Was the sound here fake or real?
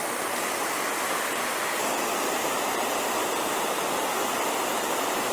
fake